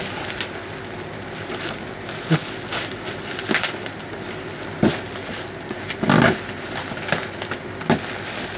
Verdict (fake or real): real